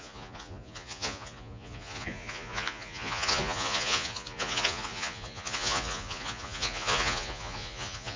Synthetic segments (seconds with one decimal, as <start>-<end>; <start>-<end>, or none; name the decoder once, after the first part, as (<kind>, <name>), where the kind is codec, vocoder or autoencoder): 0.0-8.2 (vocoder, Vocos)